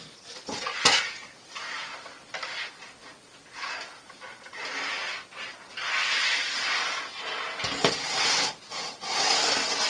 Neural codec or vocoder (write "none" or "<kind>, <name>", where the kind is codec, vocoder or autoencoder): none